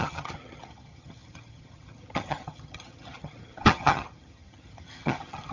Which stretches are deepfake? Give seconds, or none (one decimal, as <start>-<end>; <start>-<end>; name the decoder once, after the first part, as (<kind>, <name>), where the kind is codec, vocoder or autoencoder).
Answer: 0.0-5.5 (vocoder, HiFi-GAN)